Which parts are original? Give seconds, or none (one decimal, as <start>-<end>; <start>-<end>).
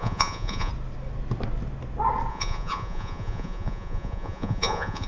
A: 0.7-2.3